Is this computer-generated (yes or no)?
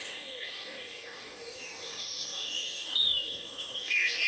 yes